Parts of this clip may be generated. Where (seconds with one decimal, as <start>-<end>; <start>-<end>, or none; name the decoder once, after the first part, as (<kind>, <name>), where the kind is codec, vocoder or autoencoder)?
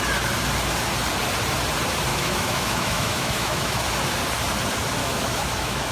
2.1-3.8 (autoencoder, DAC-VAE); 5.0-5.9